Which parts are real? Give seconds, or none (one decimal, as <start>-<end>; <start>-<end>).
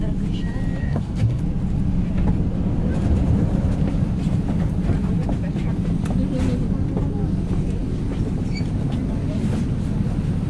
0.0-0.8; 1.4-10.5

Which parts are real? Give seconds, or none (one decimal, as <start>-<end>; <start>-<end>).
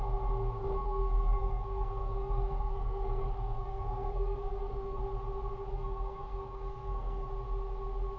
0.0-0.6; 5.0-5.7; 7.3-8.2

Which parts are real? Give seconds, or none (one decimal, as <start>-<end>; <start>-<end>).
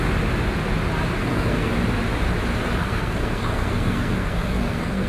0.0-1.2; 1.7-2.8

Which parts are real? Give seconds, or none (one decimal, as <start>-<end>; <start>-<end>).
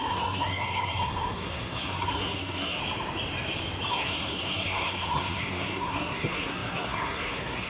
2.8-3.9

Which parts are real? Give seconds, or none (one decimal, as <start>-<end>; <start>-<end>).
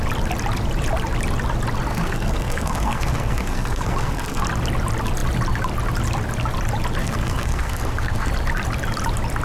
0.0-1.9; 4.4-7.0; 8.3-9.4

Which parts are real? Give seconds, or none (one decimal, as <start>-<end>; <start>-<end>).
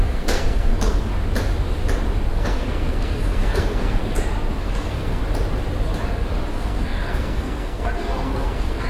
1.1-2.3; 4.0-4.6; 5.2-6.5